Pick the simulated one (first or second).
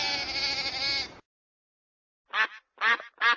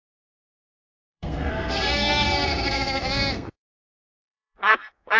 second